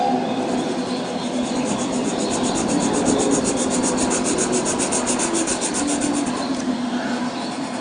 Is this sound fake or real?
real